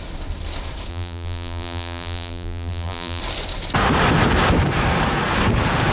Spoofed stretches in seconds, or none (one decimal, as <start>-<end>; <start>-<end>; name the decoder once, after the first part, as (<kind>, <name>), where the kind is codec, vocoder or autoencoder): 0.9-3.2 (vocoder, BigVGAN v2)